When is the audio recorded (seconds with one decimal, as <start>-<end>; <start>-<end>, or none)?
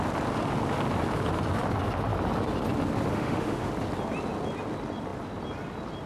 0.0-3.1; 3.7-6.1